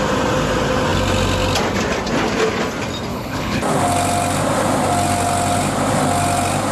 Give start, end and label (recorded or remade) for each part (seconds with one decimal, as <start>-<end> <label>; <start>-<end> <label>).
0.0-3.1 recorded; 3.1-3.6 remade; 3.6-6.7 recorded